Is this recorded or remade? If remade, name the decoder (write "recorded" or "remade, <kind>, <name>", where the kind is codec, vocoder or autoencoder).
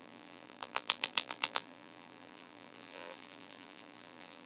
remade, vocoder, BigVGAN v2